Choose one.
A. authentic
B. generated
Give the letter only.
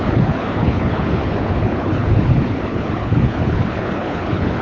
B